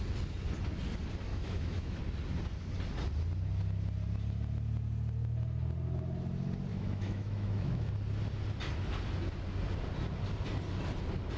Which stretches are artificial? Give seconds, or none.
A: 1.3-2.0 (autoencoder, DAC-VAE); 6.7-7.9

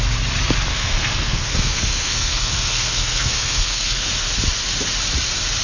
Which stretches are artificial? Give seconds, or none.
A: 0.7-4.1 (codec, SNAC)

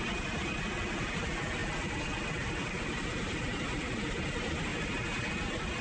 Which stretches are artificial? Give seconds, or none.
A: 1.6-4.1 (vocoder, BigVGAN v2)

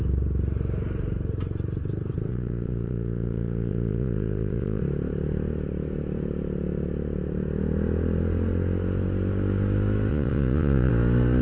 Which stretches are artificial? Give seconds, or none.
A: 2.3-4.8 (vocoder, Vocos); 10.1-10.9

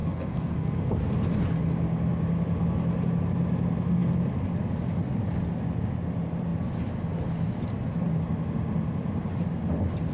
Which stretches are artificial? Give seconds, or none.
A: 0.0-1.1 (codec, SNAC)

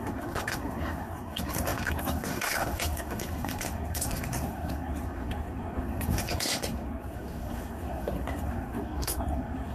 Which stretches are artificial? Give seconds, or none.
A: 0.0-9.7 (codec, SNAC)